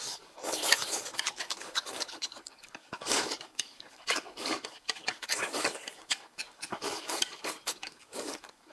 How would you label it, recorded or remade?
remade